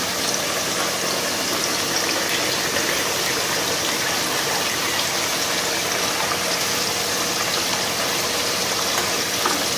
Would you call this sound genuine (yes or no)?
yes